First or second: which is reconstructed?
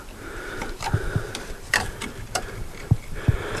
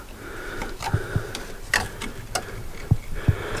first